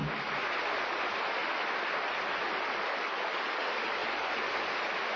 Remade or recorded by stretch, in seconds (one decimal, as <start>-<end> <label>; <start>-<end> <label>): 0.0-5.2 recorded